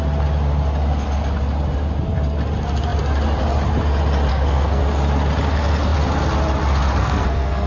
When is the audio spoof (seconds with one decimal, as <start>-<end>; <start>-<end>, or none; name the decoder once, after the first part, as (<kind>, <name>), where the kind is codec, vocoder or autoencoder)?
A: 4.3-4.8 (codec, SNAC); 7.0-7.7

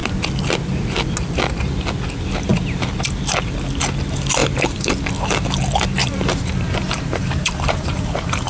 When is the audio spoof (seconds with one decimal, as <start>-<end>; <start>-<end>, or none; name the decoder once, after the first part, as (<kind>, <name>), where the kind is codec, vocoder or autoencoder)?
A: 2.5-3.0 (vocoder, BigVGAN v2); 4.4-4.9; 6.0-8.5

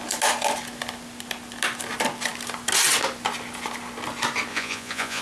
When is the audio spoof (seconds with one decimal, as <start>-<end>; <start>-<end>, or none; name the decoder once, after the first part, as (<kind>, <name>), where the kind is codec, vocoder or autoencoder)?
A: 4.5-5.2 (vocoder, Vocos)